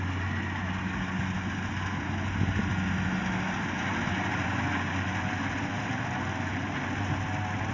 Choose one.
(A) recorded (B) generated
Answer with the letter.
A